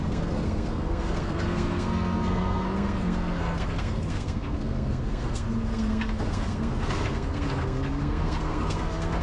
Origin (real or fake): fake